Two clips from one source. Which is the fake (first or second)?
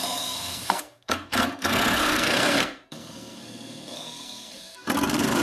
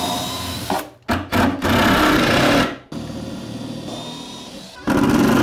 first